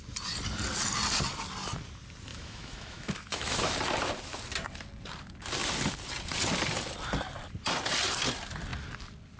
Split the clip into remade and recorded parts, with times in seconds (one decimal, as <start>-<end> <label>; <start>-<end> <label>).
0.0-2.3 recorded; 2.3-3.7 remade; 3.7-9.4 recorded